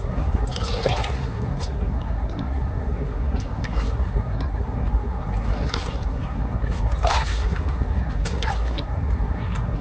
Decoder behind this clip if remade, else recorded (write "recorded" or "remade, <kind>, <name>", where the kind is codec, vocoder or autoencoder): remade, codec, SNAC